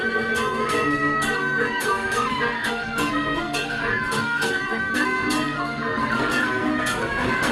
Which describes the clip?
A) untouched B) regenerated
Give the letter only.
B